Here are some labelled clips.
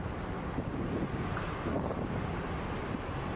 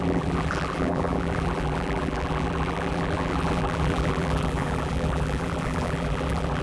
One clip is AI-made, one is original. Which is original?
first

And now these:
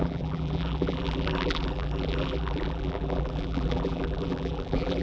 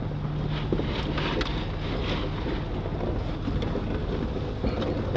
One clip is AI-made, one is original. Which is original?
second